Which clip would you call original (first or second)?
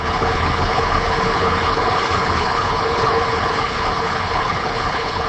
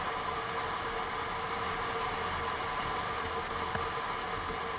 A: second